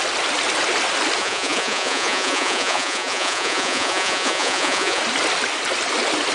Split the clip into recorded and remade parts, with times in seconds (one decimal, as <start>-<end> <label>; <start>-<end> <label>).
0.0-1.2 recorded; 1.2-5.0 remade; 5.0-6.3 recorded